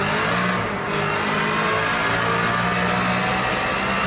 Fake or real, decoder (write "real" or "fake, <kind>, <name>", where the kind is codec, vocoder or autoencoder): real